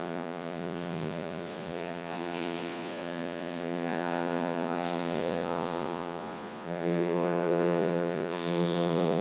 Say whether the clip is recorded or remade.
remade